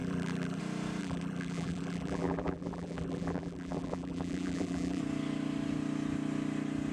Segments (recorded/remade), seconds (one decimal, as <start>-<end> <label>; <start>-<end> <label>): 0.0-0.6 remade; 0.6-1.0 recorded; 1.0-5.0 remade; 5.0-6.9 recorded